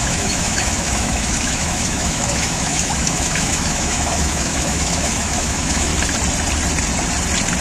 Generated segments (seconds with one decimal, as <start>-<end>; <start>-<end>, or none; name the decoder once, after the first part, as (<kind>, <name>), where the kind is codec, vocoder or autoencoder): 0.0-5.9 (autoencoder, DAC-VAE)